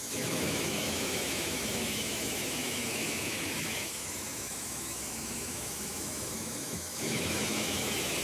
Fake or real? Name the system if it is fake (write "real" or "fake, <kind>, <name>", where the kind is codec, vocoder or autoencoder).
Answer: fake, autoencoder, DAC-VAE